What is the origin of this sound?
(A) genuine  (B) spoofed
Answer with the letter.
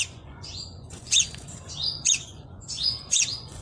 B